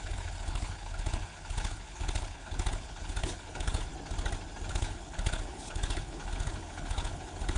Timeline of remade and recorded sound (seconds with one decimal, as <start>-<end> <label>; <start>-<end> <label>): 0.0-3.9 remade; 3.9-4.7 recorded; 4.7-7.6 remade